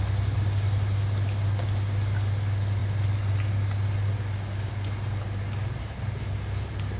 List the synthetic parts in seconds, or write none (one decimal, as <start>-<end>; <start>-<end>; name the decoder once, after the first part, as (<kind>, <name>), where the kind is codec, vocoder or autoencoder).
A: none